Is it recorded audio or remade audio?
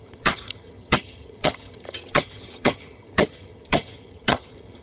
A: remade